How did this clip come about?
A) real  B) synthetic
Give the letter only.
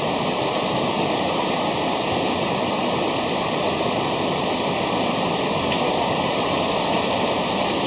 A